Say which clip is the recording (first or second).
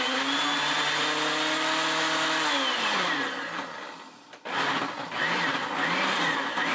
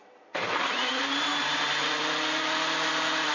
first